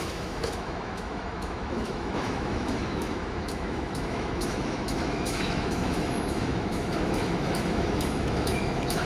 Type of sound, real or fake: fake